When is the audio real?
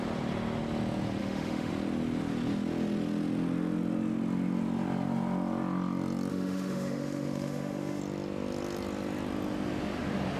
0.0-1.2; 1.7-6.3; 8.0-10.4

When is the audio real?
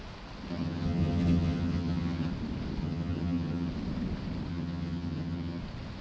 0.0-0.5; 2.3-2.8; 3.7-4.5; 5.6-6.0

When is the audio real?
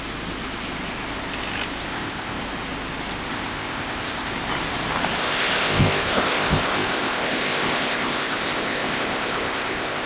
0.0-1.9; 2.4-3.3; 4.3-5.2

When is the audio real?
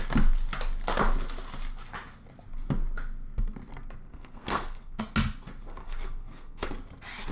0.0-4.1; 5.0-5.8; 6.7-7.3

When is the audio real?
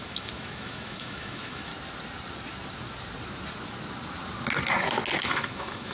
1.7-5.2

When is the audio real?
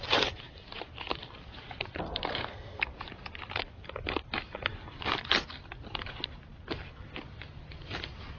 0.0-2.3; 2.8-8.4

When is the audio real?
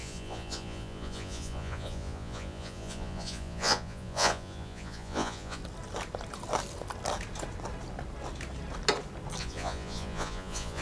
5.6-9.4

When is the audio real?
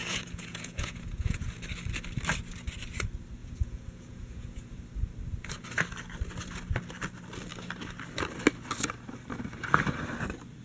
1.5-3.4; 4.8-10.6